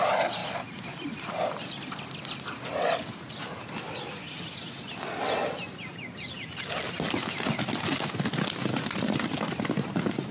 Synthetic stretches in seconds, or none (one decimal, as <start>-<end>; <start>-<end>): 5.9-6.7